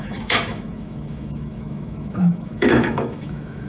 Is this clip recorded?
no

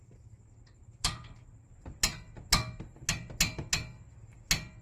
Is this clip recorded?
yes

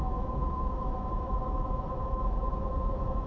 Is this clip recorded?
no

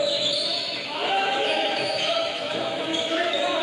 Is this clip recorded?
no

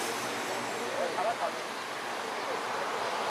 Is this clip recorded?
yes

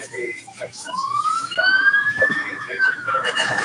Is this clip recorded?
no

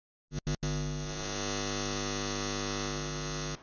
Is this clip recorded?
yes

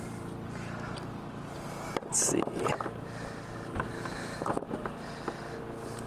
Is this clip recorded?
yes